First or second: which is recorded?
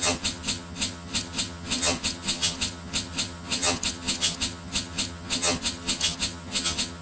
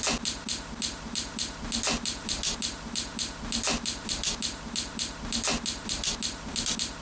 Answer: second